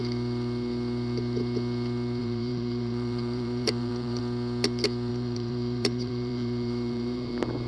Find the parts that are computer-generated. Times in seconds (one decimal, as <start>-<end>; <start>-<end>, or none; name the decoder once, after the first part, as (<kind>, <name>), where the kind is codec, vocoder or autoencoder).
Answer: 2.2-4.2 (vocoder, BigVGAN v2); 5.1-7.3